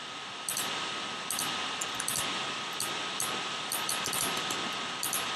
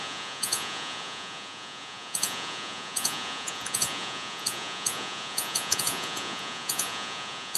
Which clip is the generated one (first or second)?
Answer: second